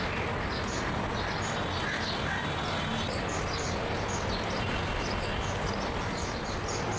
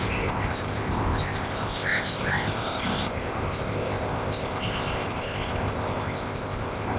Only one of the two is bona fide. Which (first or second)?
first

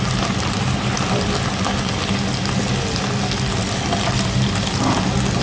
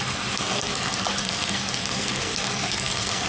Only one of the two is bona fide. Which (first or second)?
first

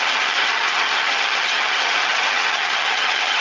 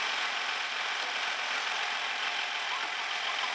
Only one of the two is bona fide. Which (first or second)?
second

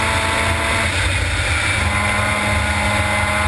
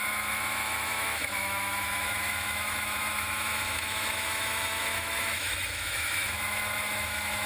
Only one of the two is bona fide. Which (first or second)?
first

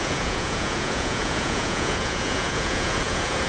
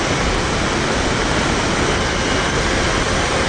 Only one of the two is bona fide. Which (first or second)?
second